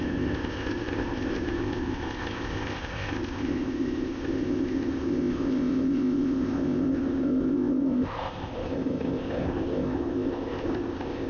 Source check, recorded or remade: remade